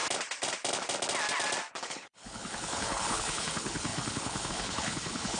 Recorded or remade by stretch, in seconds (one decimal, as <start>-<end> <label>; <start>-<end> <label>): 0.0-1.7 recorded; 1.7-5.4 remade